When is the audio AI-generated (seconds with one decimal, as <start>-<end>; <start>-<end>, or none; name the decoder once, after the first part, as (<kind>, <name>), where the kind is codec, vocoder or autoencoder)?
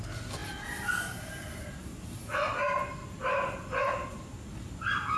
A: none